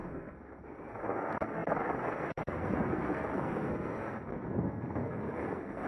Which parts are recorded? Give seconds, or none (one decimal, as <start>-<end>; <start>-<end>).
none

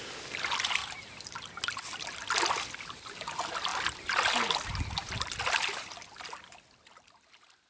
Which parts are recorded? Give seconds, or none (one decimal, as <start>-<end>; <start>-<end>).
0.0-7.7

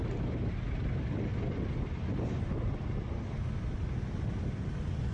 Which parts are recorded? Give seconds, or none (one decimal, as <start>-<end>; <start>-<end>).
0.0-5.1

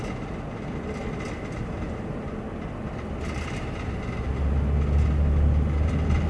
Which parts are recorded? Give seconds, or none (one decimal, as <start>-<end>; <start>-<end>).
0.0-6.3

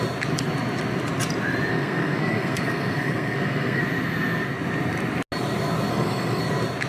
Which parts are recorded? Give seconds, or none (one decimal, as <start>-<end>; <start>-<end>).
0.0-1.7; 3.8-5.9; 6.4-6.9

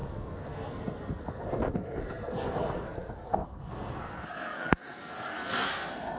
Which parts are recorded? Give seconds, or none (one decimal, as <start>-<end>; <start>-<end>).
none